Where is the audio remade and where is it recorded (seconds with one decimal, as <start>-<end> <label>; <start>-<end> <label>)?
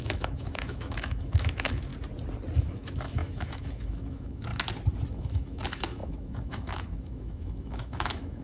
0.0-1.9 remade; 1.9-2.6 recorded; 2.6-4.5 remade; 4.5-5.1 recorded; 5.1-8.4 remade